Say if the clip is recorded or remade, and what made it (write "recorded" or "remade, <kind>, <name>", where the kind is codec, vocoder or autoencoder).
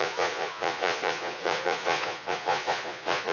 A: remade, vocoder, Vocos